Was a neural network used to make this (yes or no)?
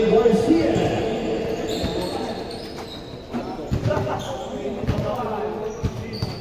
no